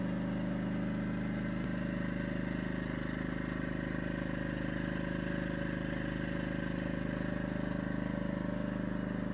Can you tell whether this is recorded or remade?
recorded